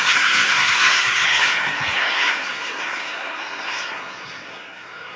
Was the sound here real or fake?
fake